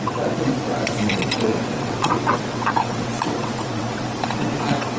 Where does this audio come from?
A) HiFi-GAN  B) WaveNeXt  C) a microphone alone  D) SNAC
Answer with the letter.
B